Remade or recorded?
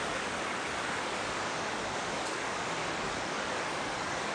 remade